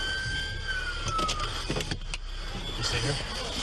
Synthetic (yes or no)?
no